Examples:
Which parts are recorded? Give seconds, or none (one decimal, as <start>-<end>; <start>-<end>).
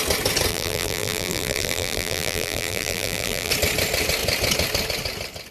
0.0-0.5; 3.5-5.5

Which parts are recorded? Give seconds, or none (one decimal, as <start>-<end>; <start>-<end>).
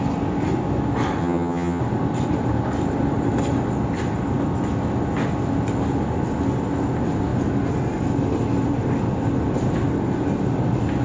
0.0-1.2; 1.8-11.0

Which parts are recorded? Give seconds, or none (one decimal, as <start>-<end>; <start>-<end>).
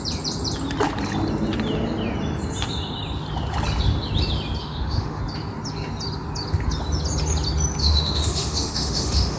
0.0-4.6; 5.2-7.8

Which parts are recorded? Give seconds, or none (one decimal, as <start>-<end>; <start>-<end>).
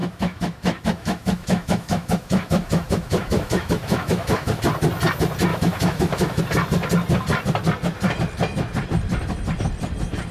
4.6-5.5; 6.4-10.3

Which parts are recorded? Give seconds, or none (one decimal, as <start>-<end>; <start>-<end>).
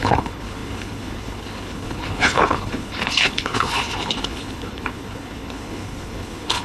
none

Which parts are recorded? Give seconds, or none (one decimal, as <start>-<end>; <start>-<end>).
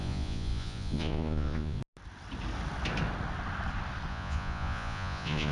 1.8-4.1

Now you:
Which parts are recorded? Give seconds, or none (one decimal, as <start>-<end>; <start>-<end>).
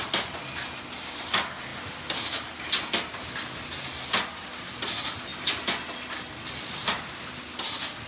0.0-8.1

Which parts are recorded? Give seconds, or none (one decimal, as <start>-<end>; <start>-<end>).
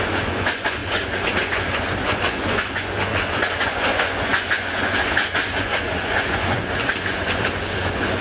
none